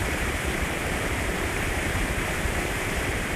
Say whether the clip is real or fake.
fake